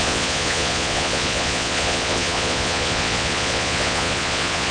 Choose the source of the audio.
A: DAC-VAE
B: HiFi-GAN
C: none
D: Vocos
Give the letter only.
D